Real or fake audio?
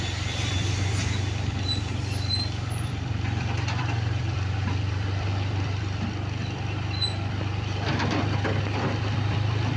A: fake